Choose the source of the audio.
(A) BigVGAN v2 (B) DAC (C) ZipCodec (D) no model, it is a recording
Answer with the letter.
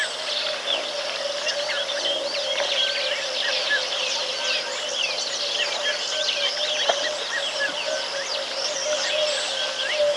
D